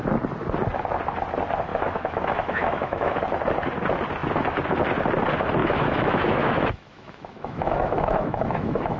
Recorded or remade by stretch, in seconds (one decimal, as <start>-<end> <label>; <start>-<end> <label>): 0.0-1.7 recorded; 1.7-3.2 remade; 3.2-5.6 recorded; 5.6-9.0 remade